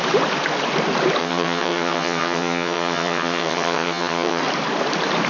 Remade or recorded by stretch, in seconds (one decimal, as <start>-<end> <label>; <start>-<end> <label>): 0.0-1.2 recorded; 1.2-4.4 remade; 4.4-5.3 recorded